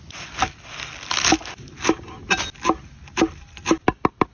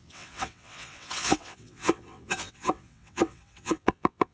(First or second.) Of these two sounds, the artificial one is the second